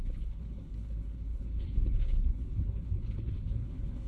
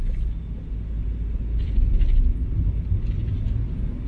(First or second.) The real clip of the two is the second